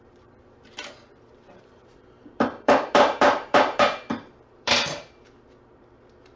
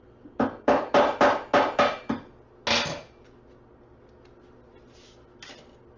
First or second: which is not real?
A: first